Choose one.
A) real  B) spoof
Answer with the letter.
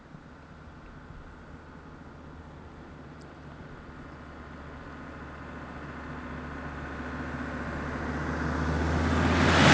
A